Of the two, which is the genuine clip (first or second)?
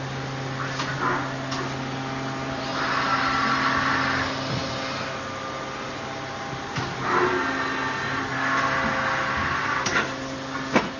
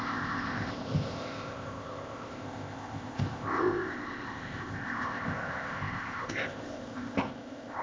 first